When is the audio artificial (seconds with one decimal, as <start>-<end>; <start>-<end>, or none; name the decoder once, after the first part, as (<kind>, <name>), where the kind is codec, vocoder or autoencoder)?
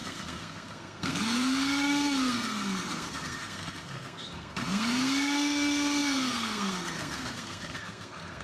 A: 0.0-8.4 (codec, SNAC)